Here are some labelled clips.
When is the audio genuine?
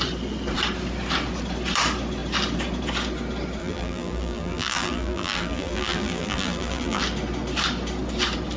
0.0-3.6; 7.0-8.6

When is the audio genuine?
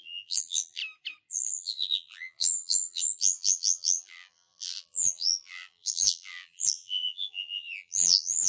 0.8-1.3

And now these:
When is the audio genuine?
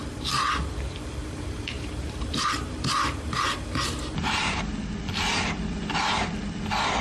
0.0-1.2; 4.7-7.0